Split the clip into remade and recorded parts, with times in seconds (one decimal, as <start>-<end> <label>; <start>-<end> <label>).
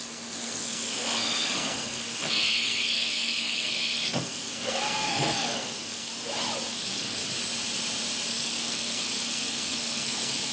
0.0-6.1 remade; 6.1-6.7 recorded; 6.7-7.2 remade; 7.2-8.3 recorded; 8.3-10.5 remade